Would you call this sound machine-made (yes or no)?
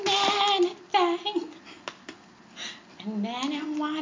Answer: no